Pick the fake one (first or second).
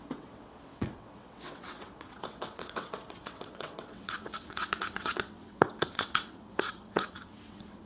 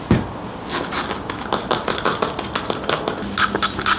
first